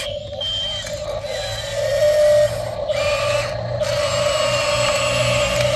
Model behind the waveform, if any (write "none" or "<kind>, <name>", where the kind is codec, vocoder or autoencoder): none